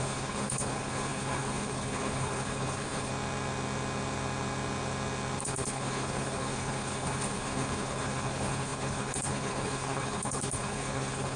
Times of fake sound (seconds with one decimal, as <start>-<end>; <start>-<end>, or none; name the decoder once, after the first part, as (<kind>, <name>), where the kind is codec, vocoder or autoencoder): 0.0-3.1 (codec, HILCodec); 5.4-11.4